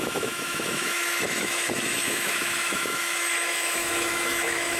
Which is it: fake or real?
fake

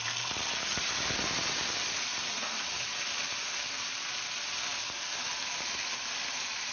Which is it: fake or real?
real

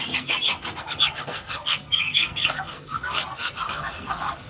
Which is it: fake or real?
fake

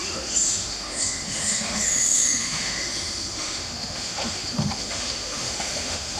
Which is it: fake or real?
fake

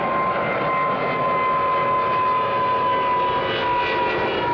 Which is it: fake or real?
real